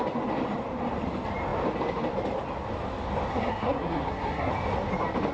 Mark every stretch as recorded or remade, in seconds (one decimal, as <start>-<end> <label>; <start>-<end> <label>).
0.0-3.3 recorded; 3.3-4.5 remade; 4.5-5.3 recorded